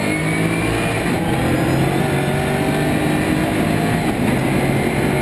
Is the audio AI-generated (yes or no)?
no